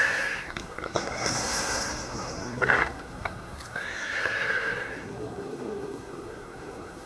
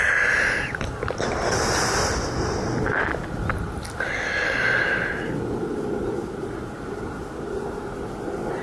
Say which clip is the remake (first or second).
first